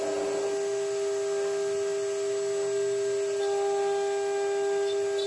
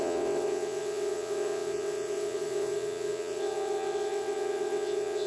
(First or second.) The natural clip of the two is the first